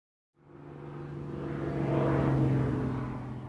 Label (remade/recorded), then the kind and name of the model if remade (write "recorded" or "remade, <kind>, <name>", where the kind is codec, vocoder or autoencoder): recorded